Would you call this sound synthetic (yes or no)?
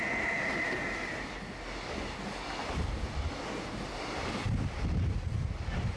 no